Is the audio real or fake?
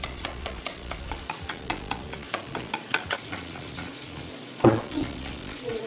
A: fake